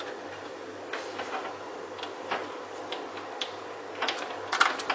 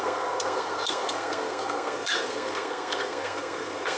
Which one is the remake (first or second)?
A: second